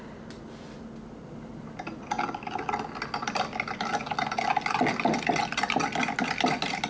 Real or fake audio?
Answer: real